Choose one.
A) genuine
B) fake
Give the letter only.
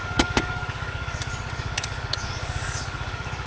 B